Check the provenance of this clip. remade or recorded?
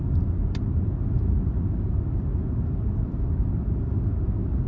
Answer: recorded